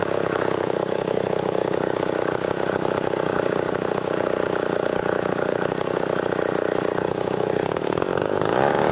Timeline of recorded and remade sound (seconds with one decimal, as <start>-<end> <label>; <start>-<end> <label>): 0.0-6.1 remade; 6.1-7.0 recorded; 7.0-8.9 remade